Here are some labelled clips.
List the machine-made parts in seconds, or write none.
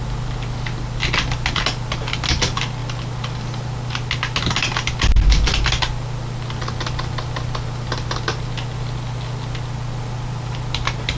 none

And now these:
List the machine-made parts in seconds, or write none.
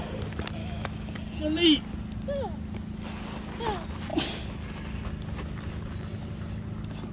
0.6-1.1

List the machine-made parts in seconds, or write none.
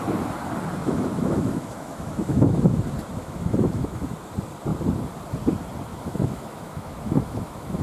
0.8-2.8; 3.2-4.1; 5.9-7.8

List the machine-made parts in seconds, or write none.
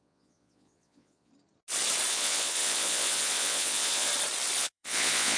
0.0-1.3; 2.1-4.1; 4.6-5.4